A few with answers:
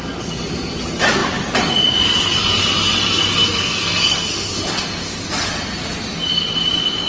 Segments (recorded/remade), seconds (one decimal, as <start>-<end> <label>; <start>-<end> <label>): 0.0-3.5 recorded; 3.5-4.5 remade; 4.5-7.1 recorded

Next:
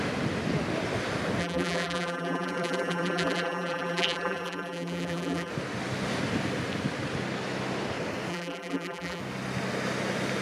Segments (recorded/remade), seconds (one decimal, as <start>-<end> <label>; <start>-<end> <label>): 0.0-1.4 recorded; 1.4-5.5 remade; 5.5-8.3 recorded; 8.3-9.2 remade; 9.2-10.4 recorded

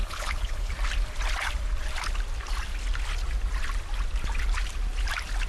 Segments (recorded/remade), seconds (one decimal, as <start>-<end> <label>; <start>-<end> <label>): 0.0-0.7 remade; 0.7-5.5 recorded